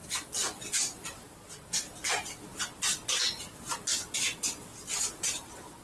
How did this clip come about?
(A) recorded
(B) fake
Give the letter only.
A